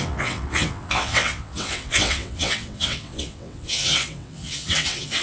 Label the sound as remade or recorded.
remade